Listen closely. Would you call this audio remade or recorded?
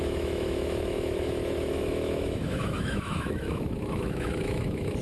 remade